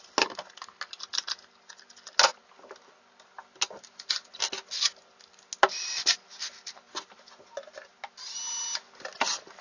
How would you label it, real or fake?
real